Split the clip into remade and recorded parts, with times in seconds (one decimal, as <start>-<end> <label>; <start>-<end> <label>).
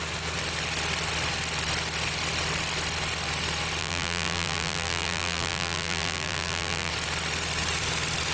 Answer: 0.0-3.8 recorded; 3.8-6.9 remade; 6.9-8.3 recorded